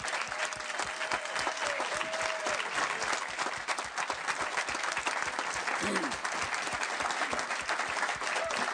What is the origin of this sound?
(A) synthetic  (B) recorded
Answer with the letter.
B